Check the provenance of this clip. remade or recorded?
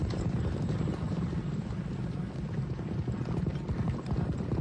recorded